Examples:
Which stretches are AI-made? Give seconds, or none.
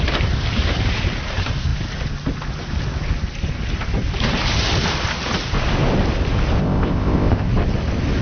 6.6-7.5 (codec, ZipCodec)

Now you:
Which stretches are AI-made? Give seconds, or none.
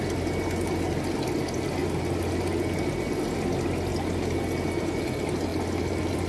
none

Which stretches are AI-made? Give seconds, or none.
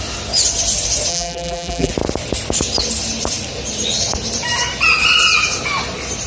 1.1-1.9 (vocoder, BigVGAN v2)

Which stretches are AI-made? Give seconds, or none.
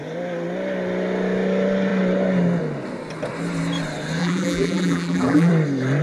4.2-5.5 (vocoder, BigVGAN v2)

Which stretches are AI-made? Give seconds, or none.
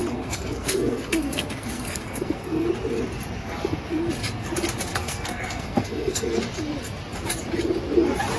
0.0-2.7 (codec, SNAC); 3.4-4.1; 4.9-6.4